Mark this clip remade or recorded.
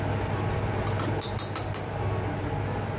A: recorded